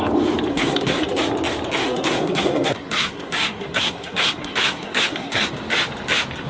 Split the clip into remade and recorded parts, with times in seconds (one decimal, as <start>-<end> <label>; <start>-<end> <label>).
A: 0.0-0.5 recorded; 0.5-1.2 remade; 1.2-1.8 recorded; 1.8-5.5 remade; 5.5-6.5 recorded